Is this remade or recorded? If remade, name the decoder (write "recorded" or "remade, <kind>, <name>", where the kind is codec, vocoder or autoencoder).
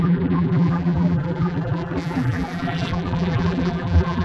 remade, vocoder, BigVGAN v2